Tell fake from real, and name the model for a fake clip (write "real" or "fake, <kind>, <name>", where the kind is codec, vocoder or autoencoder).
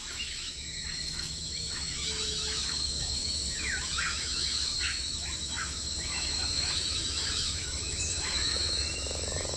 fake, autoencoder, DAC-VAE